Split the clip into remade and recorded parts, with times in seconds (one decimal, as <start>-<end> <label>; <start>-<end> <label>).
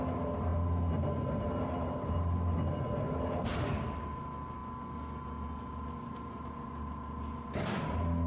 0.0-8.3 recorded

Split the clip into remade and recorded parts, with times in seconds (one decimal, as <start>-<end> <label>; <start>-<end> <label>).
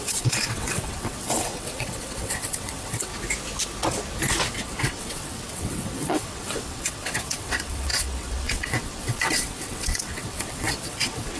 0.0-3.1 remade; 3.1-4.5 recorded; 4.5-11.4 remade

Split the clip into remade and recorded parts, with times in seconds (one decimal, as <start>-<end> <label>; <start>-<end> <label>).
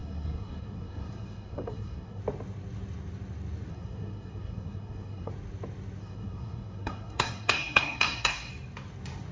0.0-2.2 remade; 2.2-3.7 recorded; 3.7-5.3 remade; 5.3-6.0 recorded; 6.0-8.5 remade; 8.5-9.3 recorded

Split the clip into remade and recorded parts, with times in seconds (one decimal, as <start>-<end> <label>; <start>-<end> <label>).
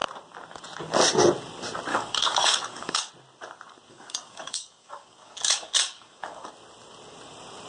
0.0-1.9 recorded; 1.9-3.1 remade; 3.1-3.9 recorded; 3.9-6.5 remade; 6.5-7.7 recorded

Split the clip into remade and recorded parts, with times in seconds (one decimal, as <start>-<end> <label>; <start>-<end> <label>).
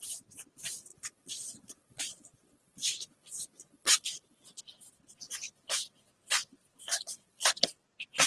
0.0-0.9 recorded; 0.9-4.6 remade; 4.6-6.8 recorded; 6.8-7.5 remade; 7.5-8.3 recorded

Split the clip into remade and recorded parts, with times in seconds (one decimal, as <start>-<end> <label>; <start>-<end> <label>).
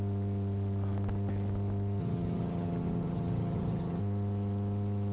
0.0-2.0 recorded; 2.0-4.0 remade; 4.0-5.1 recorded